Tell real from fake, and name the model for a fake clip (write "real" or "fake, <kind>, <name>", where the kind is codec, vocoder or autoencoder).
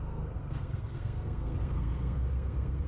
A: fake, codec, SNAC